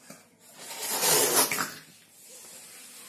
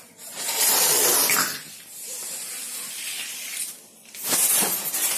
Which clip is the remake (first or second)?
second